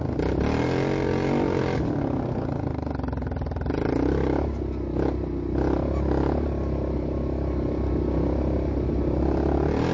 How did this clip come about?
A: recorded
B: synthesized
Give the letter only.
A